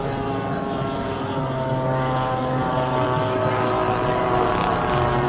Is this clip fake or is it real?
real